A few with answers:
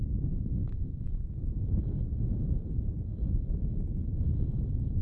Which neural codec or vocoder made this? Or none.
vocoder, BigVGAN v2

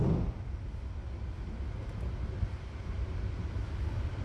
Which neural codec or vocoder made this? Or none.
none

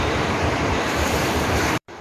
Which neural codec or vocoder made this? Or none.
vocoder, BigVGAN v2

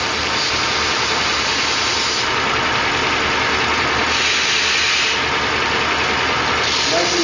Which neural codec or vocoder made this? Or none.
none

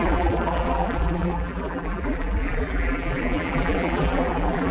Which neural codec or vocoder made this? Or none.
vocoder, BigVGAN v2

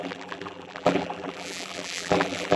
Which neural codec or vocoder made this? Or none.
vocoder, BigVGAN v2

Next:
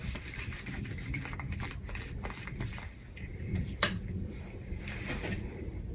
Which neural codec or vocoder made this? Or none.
vocoder, BigVGAN v2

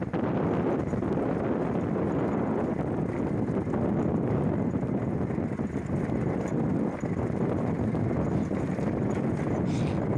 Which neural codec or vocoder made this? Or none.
none